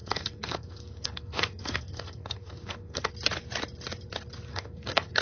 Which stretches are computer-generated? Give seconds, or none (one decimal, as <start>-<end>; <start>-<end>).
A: 0.0-3.1; 4.5-5.2